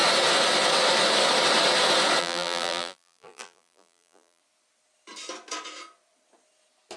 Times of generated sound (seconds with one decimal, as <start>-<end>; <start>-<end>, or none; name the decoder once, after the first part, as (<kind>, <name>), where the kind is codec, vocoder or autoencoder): 2.2-4.4 (vocoder, BigVGAN v2)